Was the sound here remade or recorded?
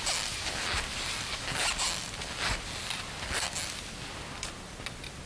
recorded